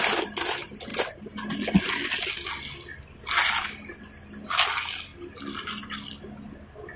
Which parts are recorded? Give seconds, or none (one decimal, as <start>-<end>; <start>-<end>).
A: 0.0-7.0